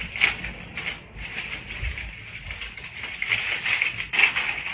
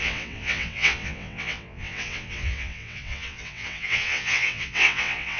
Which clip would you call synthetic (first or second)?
second